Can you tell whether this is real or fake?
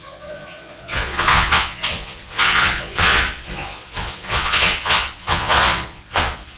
fake